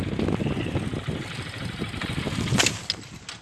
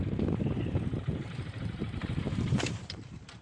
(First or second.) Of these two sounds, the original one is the first